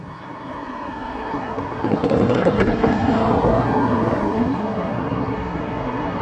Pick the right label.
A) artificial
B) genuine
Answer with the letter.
A